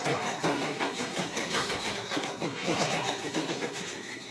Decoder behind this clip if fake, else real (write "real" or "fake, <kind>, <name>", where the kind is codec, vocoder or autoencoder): fake, codec, SNAC